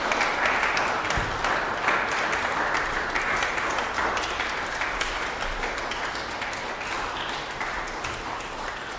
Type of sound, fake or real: real